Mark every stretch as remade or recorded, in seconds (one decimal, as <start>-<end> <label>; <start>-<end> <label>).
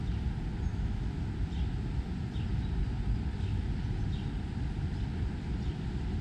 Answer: 0.0-0.7 recorded; 0.7-1.2 remade; 1.2-6.2 recorded